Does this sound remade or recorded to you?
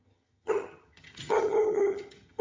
remade